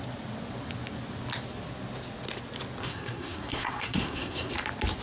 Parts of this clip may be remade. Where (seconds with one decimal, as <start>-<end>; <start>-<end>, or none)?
2.8-4.5